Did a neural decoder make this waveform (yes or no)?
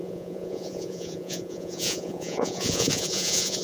yes